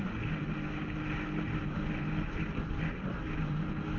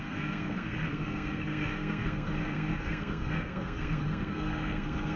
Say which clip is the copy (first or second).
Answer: second